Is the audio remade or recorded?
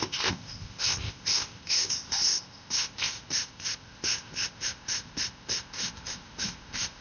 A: remade